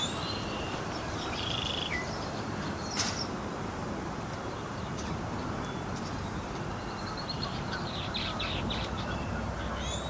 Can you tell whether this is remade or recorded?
remade